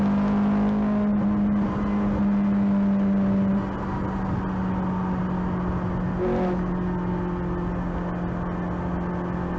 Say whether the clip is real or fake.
real